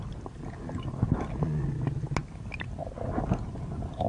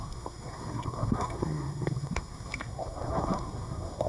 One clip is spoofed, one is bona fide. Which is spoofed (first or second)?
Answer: second